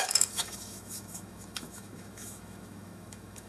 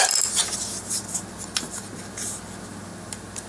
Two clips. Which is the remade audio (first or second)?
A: first